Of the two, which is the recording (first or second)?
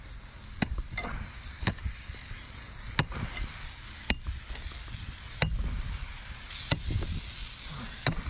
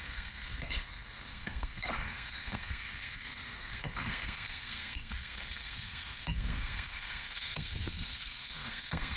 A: first